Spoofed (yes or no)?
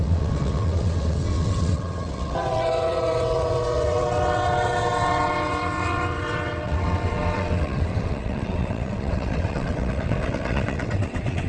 yes